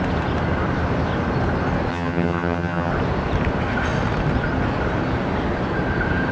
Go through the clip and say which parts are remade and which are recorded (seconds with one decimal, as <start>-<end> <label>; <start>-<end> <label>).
0.0-1.9 recorded; 1.9-2.9 remade; 2.9-6.3 recorded